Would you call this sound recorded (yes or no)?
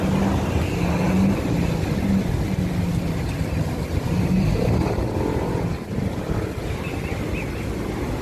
yes